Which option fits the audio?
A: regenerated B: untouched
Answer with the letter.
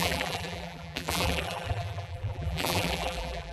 A